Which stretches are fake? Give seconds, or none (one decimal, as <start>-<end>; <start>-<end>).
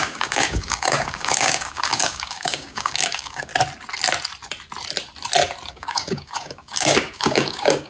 0.0-3.5; 5.7-7.9